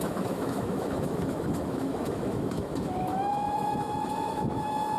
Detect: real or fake fake